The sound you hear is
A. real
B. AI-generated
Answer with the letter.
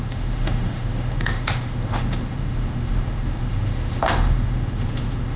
B